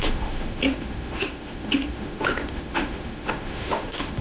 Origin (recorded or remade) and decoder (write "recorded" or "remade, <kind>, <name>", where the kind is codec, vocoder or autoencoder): remade, autoencoder, DAC-VAE